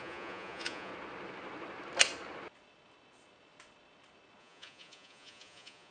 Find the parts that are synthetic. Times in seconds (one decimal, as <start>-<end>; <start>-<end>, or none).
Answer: 0.0-0.9; 4.4-5.9

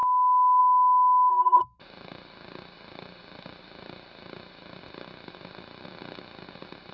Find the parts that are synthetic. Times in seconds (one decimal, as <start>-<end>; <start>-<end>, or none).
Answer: 1.3-1.8

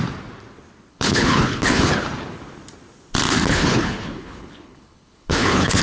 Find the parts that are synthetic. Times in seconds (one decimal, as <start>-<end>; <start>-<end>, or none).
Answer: 0.9-1.9; 3.5-5.8

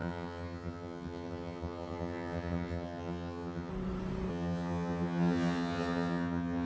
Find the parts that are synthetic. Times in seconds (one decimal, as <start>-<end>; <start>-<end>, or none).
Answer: 0.0-3.7; 4.3-6.7

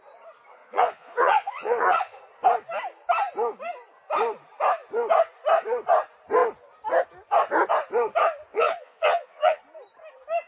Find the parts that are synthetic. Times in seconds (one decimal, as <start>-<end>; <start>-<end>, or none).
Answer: 0.6-2.2; 8.5-9.6

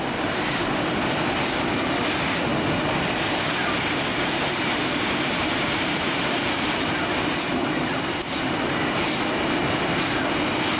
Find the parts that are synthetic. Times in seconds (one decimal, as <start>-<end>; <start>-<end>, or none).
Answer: 2.5-3.1; 4.1-7.0